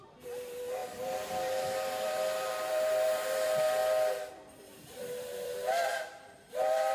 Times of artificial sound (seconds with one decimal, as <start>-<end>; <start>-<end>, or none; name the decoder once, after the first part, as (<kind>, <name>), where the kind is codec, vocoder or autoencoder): 0.0-3.8 (vocoder, BigVGAN v2); 4.3-6.9